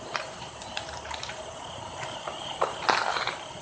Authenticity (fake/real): fake